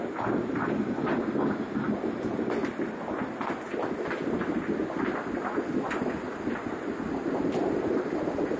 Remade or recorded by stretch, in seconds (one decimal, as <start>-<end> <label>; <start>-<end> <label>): 0.0-8.6 recorded